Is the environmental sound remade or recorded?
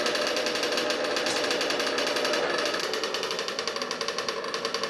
recorded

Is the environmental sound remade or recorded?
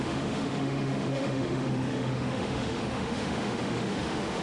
remade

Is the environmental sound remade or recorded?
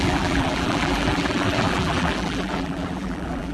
remade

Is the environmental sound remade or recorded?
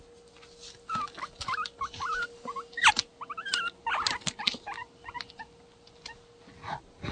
recorded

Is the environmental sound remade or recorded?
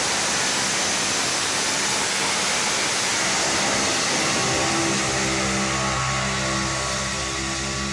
recorded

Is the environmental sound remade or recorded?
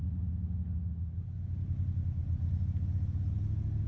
recorded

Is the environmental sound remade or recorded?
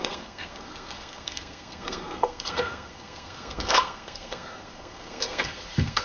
remade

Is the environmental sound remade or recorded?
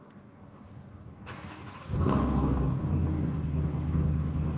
remade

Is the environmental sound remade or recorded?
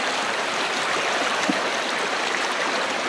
remade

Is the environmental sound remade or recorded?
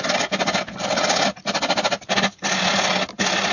recorded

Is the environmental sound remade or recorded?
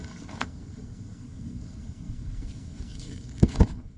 remade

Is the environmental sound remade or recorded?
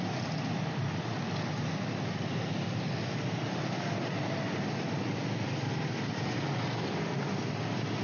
recorded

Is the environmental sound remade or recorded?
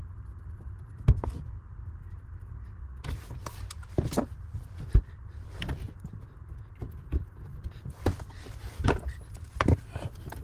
remade